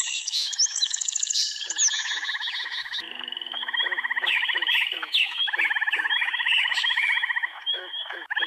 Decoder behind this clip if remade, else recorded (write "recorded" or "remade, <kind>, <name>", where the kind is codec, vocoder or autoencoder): remade, autoencoder, DAC-VAE